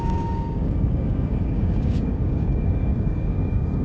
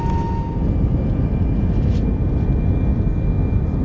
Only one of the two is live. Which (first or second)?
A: second